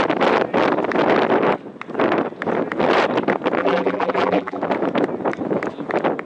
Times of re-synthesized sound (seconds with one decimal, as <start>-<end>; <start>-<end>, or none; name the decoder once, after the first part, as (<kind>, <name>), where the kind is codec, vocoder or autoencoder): 3.6-4.6 (vocoder, BigVGAN v2)